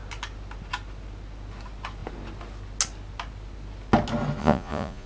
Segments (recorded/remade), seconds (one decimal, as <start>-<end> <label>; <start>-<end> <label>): 0.0-4.4 recorded; 4.4-5.1 remade